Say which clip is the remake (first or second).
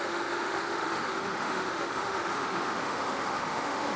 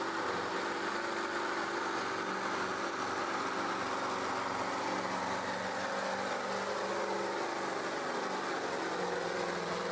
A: first